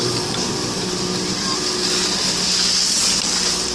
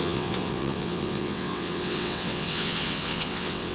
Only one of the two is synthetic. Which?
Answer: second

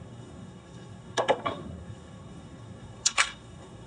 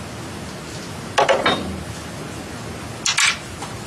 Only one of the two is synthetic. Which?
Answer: first